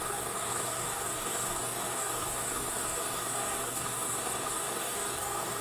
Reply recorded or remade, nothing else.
remade